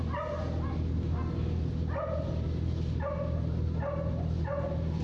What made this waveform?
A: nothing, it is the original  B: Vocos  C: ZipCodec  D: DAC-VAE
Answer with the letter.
A